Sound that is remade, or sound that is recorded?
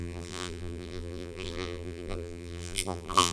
remade